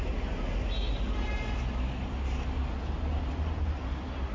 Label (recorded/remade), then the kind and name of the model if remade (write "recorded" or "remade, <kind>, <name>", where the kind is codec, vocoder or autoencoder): recorded